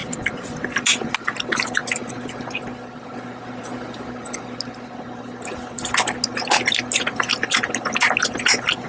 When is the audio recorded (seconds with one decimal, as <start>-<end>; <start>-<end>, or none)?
0.0-8.9